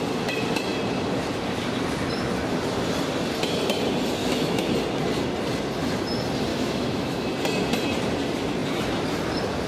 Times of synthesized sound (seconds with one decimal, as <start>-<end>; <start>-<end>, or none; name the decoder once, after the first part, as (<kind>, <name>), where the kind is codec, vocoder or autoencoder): 4.2-4.7 (autoencoder, DAC-VAE); 6.5-7.3